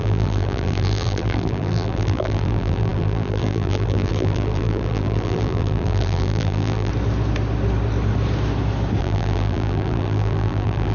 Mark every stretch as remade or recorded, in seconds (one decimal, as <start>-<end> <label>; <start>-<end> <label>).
0.0-6.9 remade; 6.9-9.0 recorded; 9.0-10.9 remade